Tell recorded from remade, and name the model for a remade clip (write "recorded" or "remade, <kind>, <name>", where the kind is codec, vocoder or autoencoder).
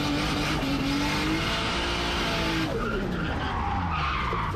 recorded